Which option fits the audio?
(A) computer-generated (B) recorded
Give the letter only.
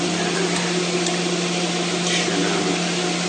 B